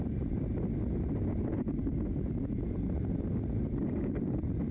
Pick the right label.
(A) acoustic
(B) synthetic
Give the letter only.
A